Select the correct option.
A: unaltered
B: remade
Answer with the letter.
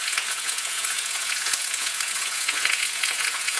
B